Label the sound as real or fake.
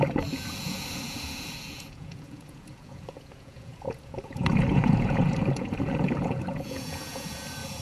fake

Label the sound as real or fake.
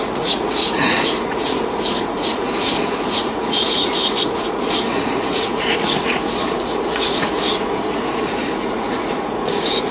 fake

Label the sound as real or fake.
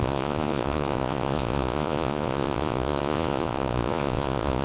fake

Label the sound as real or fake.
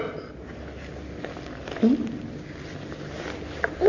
real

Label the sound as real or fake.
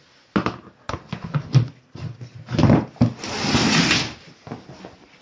real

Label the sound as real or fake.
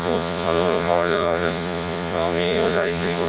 fake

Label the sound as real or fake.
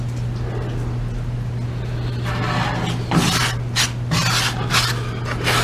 real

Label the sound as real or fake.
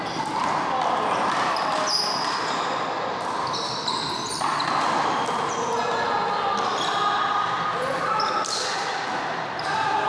real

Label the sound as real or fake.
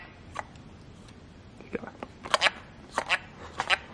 real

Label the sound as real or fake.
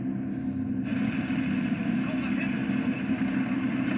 real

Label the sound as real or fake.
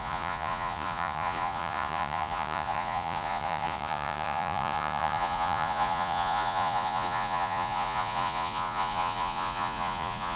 fake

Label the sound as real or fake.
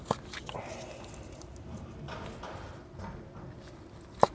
real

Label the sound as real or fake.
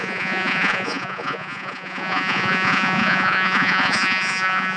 fake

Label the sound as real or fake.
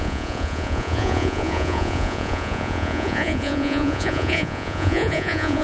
fake